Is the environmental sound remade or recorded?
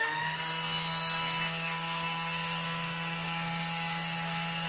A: remade